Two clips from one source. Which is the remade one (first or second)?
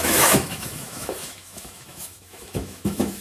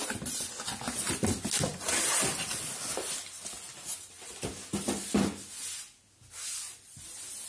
first